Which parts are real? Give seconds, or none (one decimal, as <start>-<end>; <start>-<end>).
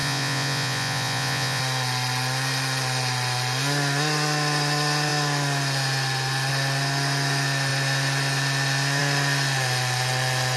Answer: 1.6-10.6